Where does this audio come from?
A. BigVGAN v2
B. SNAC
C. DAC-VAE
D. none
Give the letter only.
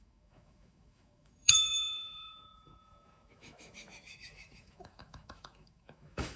C